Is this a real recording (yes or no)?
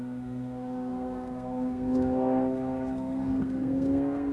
no